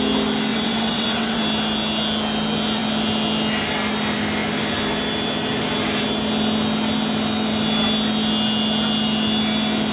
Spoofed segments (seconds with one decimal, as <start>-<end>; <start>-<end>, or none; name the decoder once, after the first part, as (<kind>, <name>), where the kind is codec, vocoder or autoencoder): 0.5-1.4 (vocoder, WaveNeXt)